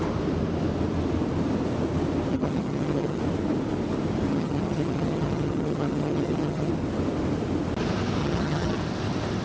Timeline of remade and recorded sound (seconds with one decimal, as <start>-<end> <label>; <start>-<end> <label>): 0.0-2.3 recorded; 2.3-3.2 remade; 3.2-4.3 recorded; 4.3-6.7 remade; 6.7-8.2 recorded; 8.2-8.8 remade; 8.8-9.4 recorded